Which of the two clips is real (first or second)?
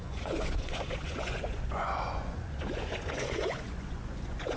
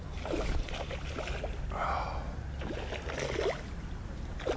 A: second